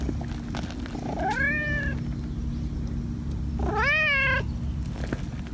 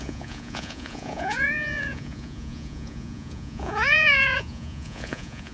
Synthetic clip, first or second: second